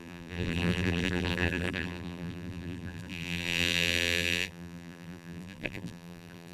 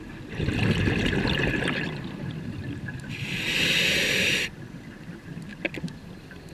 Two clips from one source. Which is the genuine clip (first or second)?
second